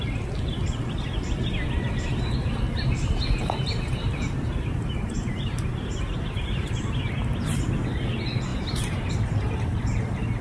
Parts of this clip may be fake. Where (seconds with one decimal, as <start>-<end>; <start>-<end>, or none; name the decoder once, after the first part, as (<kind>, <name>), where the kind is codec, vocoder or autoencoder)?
3.4-6.0 (vocoder, BigVGAN v2); 8.5-9.1